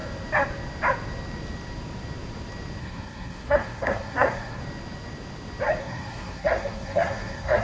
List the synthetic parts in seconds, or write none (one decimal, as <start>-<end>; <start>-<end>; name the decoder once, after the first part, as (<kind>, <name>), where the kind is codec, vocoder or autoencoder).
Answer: 2.8-4.6 (codec, SNAC); 5.8-7.6